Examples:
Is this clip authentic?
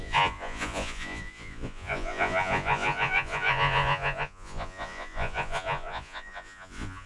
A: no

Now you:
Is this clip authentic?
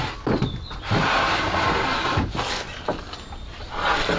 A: yes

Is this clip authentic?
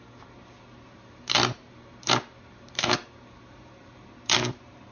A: no